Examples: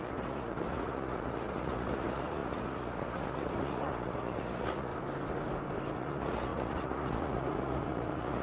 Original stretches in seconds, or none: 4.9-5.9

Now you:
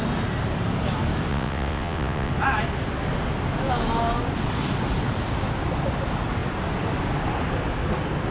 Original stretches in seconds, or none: 0.0-1.3; 2.3-8.3

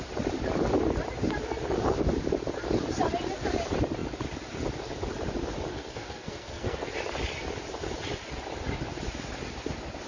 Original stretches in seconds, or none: 0.0-5.7; 6.9-10.1

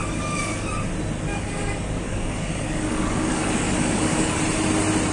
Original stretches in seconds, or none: 0.7-1.3; 4.4-5.1

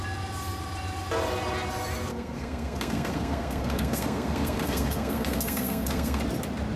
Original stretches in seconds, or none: 0.0-2.1; 6.2-6.8

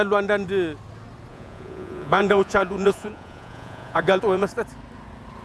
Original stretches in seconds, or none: 0.0-1.3; 4.5-5.4

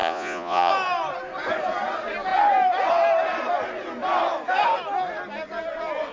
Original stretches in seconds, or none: 0.7-6.1